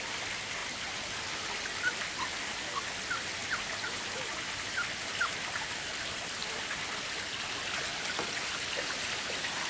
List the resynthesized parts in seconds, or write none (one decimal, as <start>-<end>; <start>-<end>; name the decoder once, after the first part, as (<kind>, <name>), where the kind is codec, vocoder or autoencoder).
none